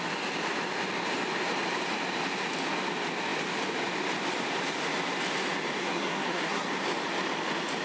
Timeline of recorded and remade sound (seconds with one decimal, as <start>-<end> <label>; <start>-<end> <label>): 0.0-5.8 recorded; 5.8-6.7 remade; 6.7-7.8 recorded